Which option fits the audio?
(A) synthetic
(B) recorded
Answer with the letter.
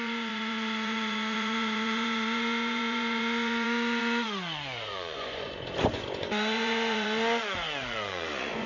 A